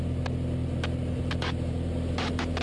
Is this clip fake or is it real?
real